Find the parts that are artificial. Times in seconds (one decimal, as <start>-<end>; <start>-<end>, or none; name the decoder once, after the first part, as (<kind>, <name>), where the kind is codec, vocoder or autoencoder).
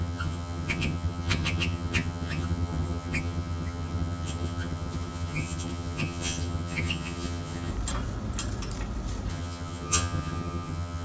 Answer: 0.0-7.7 (vocoder, HiFi-GAN); 9.3-11.0